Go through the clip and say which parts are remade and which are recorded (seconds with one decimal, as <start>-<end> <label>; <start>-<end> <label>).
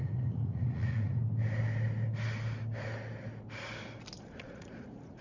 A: 0.0-1.2 remade; 1.2-4.3 recorded; 4.3-5.2 remade